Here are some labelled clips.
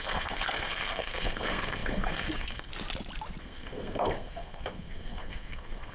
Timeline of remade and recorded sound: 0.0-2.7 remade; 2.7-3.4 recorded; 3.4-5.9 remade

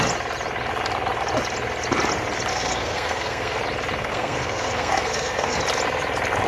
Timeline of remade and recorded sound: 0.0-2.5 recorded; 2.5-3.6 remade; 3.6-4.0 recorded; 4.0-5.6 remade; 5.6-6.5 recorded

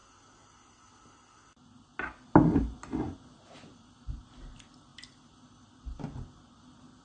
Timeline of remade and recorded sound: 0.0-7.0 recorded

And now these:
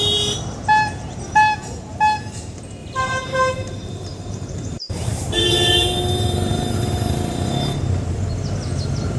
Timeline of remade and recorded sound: 0.0-2.8 recorded; 2.8-5.7 remade; 5.7-9.2 recorded